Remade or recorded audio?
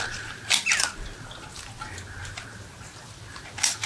recorded